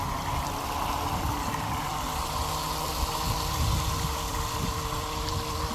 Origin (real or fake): real